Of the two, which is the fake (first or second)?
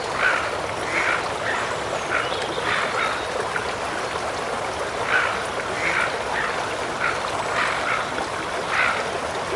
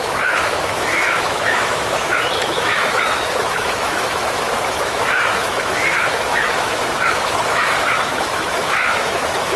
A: second